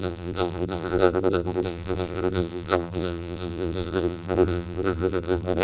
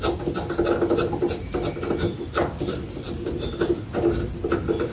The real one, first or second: second